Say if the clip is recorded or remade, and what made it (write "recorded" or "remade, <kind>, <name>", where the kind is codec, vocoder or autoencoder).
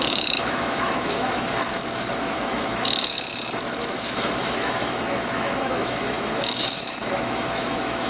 remade, autoencoder, DAC-VAE